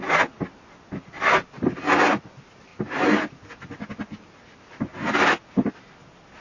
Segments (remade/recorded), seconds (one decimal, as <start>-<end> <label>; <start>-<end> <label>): 0.0-6.4 recorded

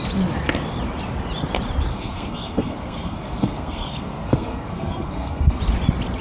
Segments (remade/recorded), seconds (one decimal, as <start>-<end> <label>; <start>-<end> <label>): 0.0-1.9 recorded; 1.9-5.6 remade; 5.6-6.2 recorded

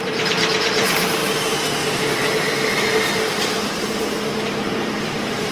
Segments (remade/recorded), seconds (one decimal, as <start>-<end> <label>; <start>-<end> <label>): 0.0-1.2 remade; 1.2-4.5 recorded; 4.5-5.5 remade

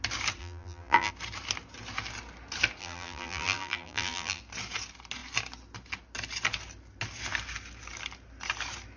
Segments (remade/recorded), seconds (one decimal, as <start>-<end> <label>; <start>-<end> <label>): 0.0-0.4 recorded; 0.4-1.1 remade; 1.1-2.8 recorded; 2.8-4.4 remade; 4.4-9.0 recorded

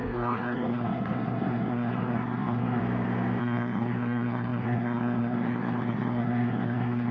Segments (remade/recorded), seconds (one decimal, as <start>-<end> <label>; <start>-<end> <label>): 0.0-2.8 remade; 2.8-3.4 recorded; 3.4-7.1 remade

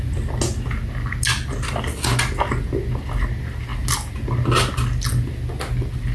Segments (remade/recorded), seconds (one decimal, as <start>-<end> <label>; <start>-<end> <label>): 0.0-6.1 recorded

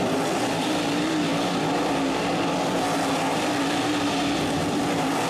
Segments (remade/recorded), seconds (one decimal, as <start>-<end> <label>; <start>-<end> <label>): 0.0-5.3 recorded

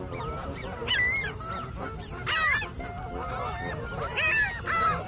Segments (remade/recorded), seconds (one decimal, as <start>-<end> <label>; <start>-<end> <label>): 0.0-5.1 recorded